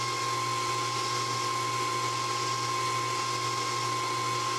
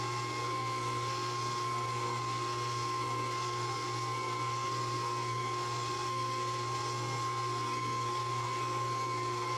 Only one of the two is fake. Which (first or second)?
second